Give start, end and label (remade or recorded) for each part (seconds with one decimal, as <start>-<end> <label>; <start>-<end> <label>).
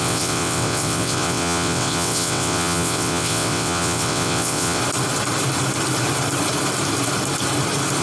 0.0-4.8 remade; 4.8-8.0 recorded